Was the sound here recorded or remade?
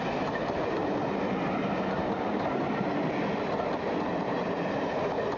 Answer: recorded